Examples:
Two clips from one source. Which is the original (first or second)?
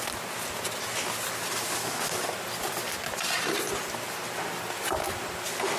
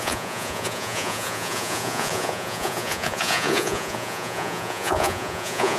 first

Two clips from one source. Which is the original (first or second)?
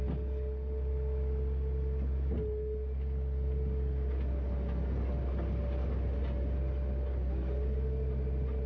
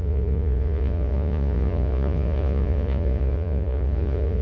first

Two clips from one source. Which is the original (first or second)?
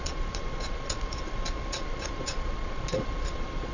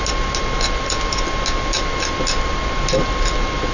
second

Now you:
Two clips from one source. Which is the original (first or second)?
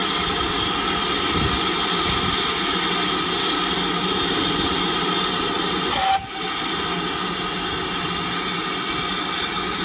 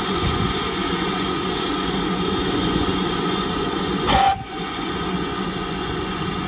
first